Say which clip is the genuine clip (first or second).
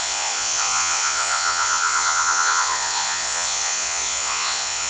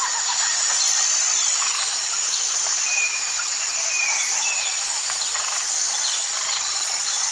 second